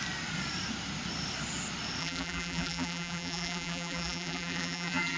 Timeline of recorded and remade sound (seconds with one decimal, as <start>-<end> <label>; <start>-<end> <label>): 0.0-2.0 recorded; 2.0-5.2 remade